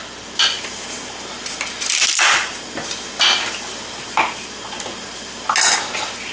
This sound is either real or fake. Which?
real